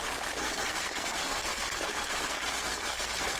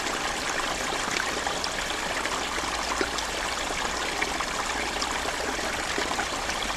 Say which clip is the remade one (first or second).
first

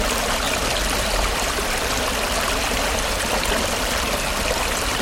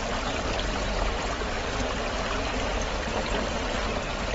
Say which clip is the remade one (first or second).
first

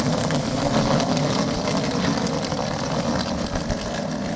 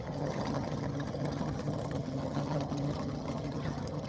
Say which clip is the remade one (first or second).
second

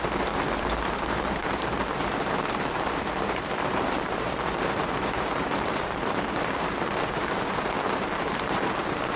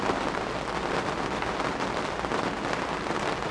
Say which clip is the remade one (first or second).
first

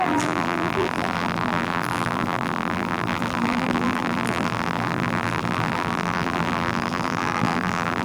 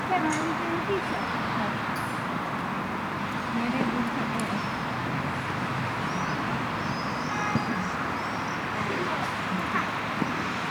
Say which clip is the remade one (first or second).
first